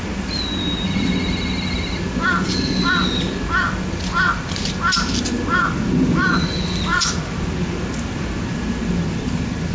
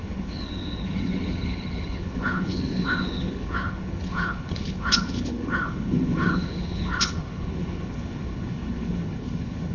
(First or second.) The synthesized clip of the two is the second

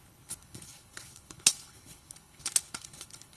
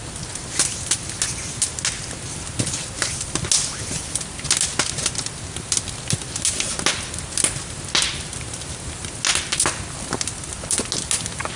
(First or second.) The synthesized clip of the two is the first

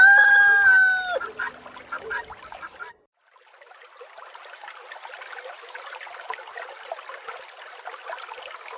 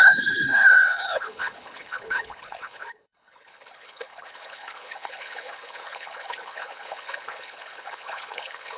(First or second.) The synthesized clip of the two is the second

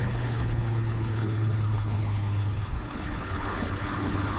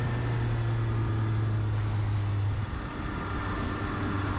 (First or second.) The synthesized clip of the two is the first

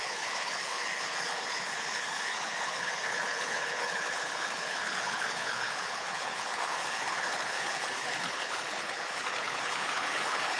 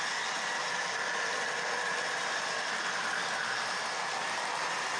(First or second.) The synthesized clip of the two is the first